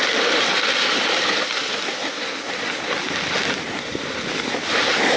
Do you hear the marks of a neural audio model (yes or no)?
no